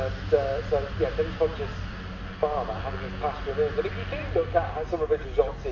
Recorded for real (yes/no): yes